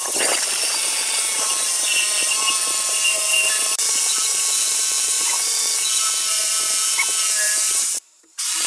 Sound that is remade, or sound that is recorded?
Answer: remade